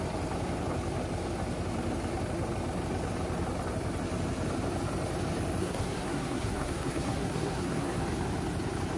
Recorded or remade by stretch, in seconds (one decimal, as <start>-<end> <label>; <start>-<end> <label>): 0.0-5.6 recorded; 5.6-8.0 remade; 8.0-9.0 recorded